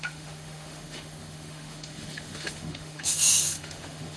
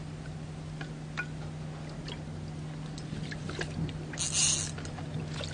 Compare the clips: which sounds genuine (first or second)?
second